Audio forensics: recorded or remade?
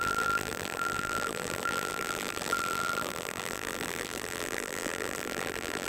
remade